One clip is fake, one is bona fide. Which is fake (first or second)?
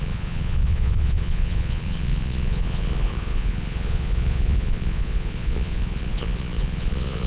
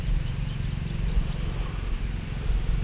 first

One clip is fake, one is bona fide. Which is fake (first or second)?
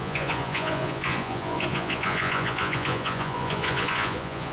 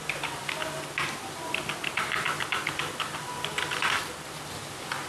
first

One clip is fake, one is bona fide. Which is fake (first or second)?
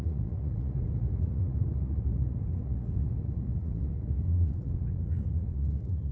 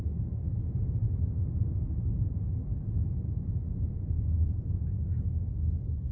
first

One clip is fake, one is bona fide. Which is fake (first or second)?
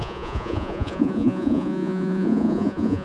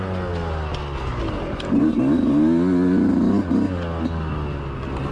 first